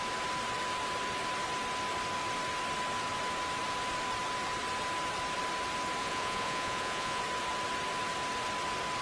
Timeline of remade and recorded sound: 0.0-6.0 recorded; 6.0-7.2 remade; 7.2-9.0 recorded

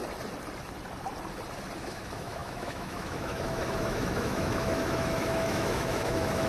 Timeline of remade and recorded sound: 0.0-1.8 recorded; 1.8-6.5 remade

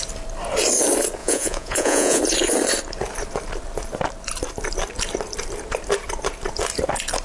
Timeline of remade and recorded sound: 0.0-1.2 recorded; 1.2-2.2 remade; 2.2-7.2 recorded

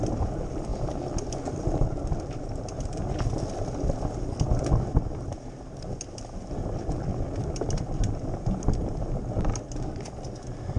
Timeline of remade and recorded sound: 0.0-10.8 recorded

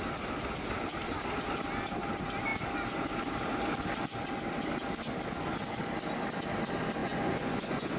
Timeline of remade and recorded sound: 0.0-7.0 recorded; 7.0-8.0 remade

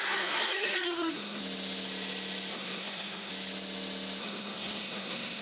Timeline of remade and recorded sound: 0.0-1.4 remade; 1.4-2.5 recorded; 2.5-3.3 remade; 3.3-4.2 recorded; 4.2-5.4 remade